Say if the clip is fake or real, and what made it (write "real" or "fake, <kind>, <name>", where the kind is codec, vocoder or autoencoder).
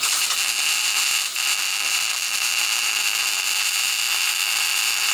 fake, vocoder, BigVGAN v2